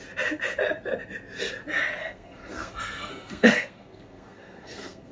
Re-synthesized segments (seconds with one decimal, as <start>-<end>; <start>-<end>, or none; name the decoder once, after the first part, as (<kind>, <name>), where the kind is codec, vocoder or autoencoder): 2.0-5.1 (codec, SNAC)